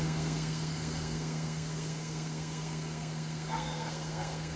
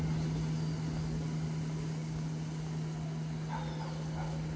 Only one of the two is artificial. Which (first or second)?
first